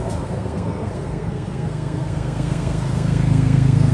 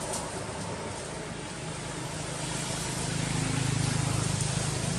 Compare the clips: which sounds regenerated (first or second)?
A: first